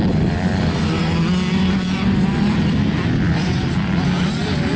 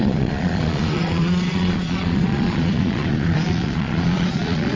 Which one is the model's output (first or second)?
second